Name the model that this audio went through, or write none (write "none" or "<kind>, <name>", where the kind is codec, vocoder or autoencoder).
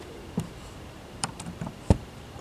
vocoder, BigVGAN v2